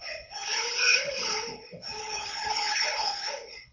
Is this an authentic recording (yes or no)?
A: no